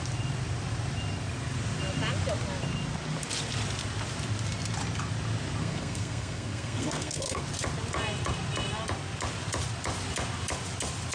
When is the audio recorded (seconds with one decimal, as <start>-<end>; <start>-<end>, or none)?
0.0-5.6; 7.4-11.1